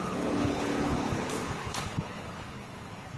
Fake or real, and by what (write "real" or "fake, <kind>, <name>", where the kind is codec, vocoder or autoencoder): fake, codec, HILCodec